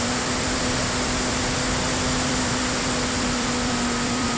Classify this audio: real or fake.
fake